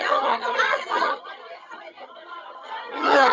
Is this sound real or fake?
fake